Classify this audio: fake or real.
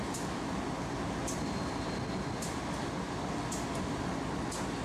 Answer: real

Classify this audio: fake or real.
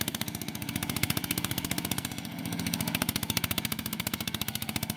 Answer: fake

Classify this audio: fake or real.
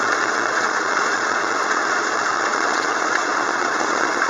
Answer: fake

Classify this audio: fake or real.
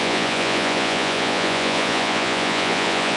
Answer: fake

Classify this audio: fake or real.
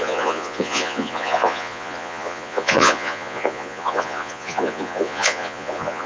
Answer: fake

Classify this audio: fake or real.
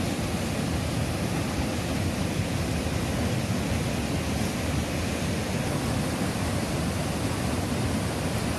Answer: real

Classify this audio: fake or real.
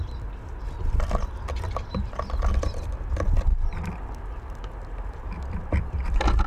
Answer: real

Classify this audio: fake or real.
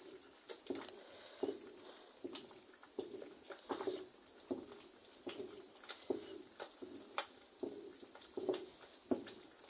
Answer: real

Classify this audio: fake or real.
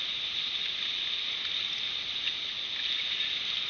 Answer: real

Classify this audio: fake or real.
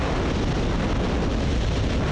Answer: real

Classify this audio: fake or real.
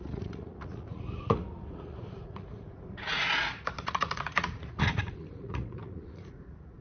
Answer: fake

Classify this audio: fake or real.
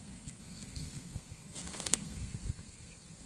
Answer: fake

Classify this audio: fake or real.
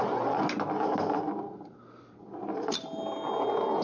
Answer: real